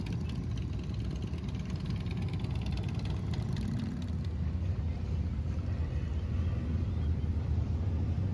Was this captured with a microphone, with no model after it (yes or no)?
yes